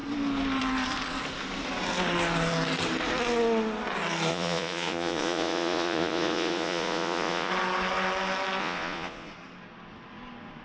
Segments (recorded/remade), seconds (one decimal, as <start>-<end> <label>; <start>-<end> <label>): 0.0-4.3 recorded; 4.3-7.5 remade; 7.5-8.6 recorded; 8.6-9.3 remade; 9.3-10.6 recorded

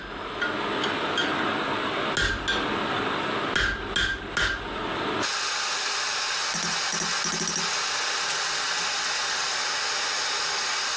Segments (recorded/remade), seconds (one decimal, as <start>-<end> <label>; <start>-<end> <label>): 0.0-11.0 recorded

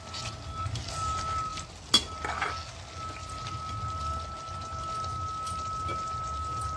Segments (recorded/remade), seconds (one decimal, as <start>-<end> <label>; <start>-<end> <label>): 0.0-6.8 recorded

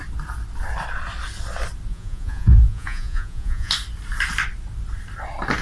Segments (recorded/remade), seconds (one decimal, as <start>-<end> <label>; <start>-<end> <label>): 0.0-1.9 recorded; 1.9-3.7 remade; 3.7-5.6 recorded

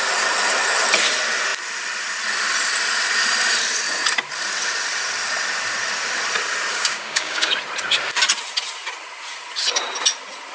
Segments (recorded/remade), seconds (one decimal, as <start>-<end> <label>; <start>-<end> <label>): 0.0-6.7 recorded; 6.7-7.5 remade; 7.5-10.5 recorded

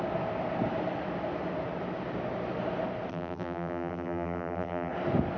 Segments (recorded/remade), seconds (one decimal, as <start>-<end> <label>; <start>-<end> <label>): 0.0-3.1 recorded; 3.1-4.9 remade; 4.9-5.4 recorded